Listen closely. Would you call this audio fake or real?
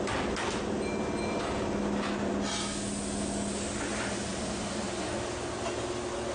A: real